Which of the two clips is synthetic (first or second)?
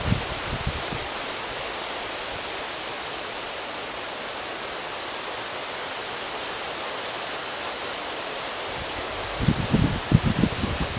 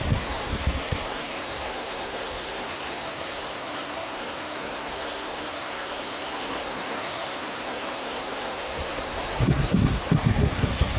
second